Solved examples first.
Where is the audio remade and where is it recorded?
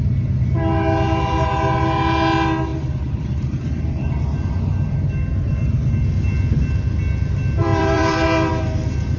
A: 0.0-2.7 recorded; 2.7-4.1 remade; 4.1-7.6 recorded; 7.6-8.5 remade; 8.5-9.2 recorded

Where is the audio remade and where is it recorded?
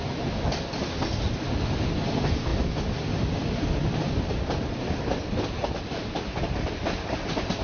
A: 0.0-7.6 recorded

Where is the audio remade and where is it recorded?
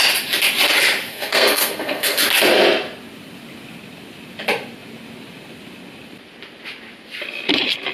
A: 0.0-1.1 recorded; 1.1-2.2 remade; 2.2-7.9 recorded